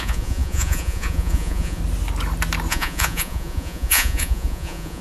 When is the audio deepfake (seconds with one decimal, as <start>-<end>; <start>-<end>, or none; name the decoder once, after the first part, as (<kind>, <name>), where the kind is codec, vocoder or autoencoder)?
0.0-1.8 (vocoder, Vocos); 2.7-5.0

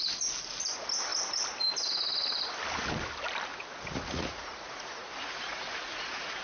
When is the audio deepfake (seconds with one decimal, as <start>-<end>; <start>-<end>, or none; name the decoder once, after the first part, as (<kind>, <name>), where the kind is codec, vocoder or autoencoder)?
3.5-6.4 (vocoder, Vocos)

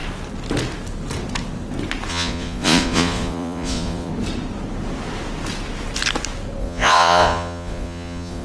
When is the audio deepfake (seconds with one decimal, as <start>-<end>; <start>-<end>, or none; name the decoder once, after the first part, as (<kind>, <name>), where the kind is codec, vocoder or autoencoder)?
2.1-4.1 (vocoder, Vocos); 6.6-8.4

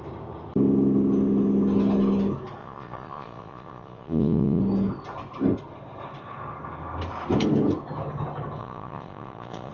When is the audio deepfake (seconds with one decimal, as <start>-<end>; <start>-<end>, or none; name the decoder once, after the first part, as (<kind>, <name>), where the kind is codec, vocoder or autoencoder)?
2.6-4.6 (vocoder, Vocos); 8.6-9.7

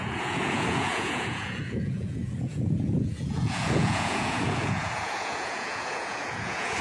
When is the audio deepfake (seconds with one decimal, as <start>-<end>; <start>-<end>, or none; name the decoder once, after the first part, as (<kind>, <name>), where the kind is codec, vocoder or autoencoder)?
0.0-6.8 (vocoder, Vocos)

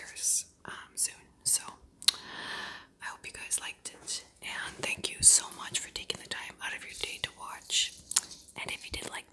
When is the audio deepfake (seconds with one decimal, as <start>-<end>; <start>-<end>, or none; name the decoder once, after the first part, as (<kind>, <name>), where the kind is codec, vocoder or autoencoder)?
2.6-4.6 (vocoder, Vocos)